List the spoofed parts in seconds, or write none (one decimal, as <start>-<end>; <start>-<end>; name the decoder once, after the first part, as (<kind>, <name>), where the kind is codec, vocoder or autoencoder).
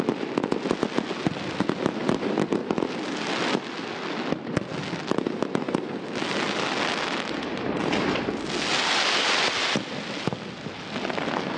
none